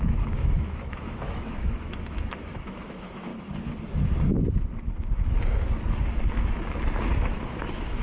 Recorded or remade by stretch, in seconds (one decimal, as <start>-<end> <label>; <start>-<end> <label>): 0.0-3.3 remade; 3.3-7.2 recorded; 7.2-8.0 remade